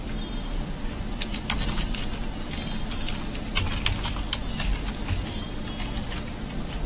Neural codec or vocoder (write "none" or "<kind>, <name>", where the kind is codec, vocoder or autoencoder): none